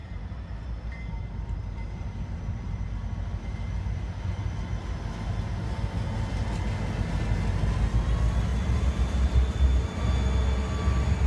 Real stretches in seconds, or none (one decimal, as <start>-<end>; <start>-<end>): 2.9-8.5; 10.0-11.3